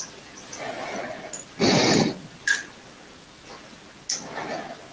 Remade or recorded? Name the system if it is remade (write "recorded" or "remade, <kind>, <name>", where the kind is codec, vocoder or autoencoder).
recorded